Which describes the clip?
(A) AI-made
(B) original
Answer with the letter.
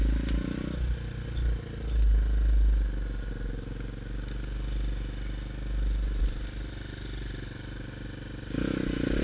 B